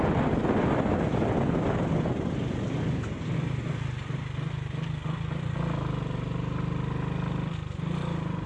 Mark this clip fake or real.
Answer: real